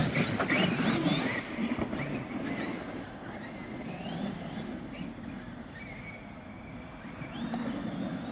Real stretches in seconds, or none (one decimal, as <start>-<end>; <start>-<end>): 0.0-8.3